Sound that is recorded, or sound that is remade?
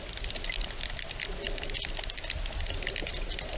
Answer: recorded